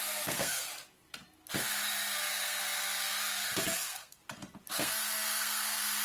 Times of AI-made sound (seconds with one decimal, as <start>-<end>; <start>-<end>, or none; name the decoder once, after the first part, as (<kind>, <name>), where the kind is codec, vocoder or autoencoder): 0.0-0.7 (codec, SNAC); 2.3-4.2; 4.8-6.0